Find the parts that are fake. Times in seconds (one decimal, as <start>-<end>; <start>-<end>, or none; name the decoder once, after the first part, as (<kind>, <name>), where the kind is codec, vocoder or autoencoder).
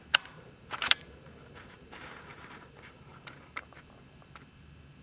0.0-5.0 (vocoder, BigVGAN v2)